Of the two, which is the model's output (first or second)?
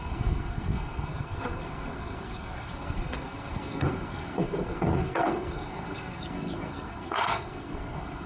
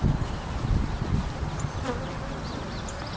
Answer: first